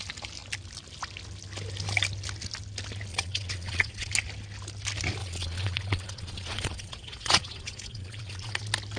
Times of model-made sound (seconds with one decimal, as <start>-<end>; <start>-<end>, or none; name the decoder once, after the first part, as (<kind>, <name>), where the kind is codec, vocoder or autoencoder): 3.1-4.1 (vocoder, Vocos); 5.2-8.6